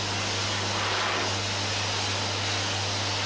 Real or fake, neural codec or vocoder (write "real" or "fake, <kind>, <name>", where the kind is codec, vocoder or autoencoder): real